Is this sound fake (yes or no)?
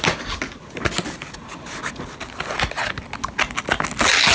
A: no